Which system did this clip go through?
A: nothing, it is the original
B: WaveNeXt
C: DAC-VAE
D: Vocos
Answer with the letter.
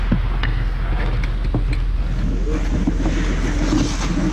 A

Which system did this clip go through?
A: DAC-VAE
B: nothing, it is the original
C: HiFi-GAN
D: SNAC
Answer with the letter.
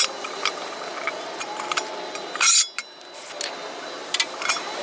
B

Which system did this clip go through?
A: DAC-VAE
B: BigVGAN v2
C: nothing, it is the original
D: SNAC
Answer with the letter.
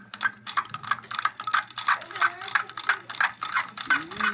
C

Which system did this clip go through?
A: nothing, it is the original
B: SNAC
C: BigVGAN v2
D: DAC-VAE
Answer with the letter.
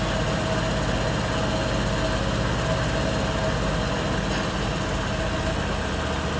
A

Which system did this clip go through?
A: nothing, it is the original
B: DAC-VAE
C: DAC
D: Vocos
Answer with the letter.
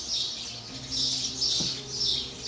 A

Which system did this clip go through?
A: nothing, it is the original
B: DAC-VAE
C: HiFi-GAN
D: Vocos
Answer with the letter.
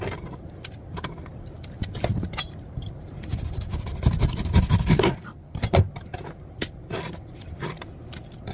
A